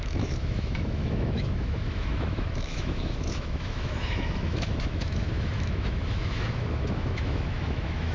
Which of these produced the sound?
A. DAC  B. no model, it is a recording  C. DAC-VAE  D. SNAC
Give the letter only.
C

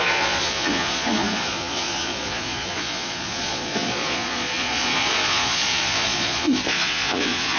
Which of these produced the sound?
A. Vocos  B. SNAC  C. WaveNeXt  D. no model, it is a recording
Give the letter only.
A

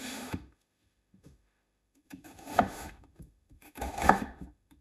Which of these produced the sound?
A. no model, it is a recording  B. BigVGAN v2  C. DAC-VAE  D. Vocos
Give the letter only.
C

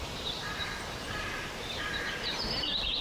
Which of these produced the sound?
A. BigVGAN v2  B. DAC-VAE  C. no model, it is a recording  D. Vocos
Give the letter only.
A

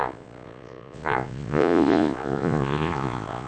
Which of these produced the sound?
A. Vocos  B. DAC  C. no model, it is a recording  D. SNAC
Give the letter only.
A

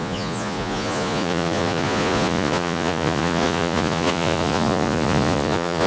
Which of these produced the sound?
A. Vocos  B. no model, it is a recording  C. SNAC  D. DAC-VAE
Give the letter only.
A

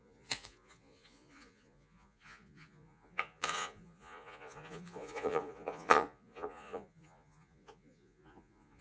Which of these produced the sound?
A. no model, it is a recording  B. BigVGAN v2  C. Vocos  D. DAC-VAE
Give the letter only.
C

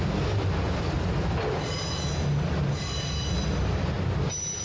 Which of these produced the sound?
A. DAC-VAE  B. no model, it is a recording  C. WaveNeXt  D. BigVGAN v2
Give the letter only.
B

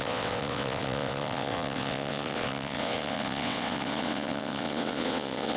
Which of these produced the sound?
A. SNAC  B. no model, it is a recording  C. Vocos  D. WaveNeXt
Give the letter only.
D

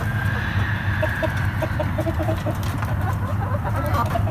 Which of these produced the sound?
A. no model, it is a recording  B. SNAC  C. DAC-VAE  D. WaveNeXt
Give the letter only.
A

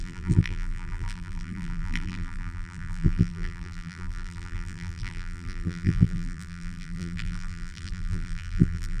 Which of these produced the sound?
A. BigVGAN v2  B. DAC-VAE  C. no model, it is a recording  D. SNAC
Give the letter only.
A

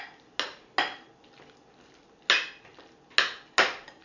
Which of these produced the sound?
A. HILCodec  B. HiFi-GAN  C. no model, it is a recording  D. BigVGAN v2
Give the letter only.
C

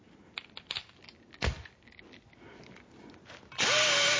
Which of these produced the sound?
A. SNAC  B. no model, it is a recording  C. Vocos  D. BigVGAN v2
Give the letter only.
B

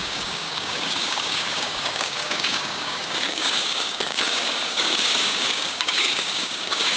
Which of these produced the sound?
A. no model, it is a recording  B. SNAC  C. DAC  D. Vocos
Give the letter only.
C